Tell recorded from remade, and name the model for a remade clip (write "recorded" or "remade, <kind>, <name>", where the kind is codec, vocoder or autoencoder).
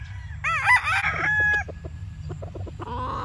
recorded